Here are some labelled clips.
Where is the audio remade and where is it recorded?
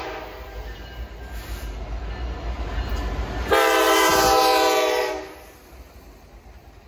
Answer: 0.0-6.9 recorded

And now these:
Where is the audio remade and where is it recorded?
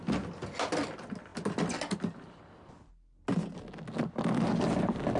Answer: 0.0-5.2 recorded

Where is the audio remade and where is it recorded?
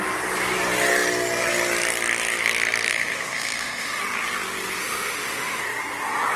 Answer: 0.0-2.9 recorded; 2.9-4.0 remade; 4.0-4.8 recorded; 4.8-5.6 remade; 5.6-6.4 recorded